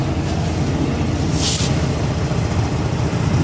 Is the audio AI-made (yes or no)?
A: no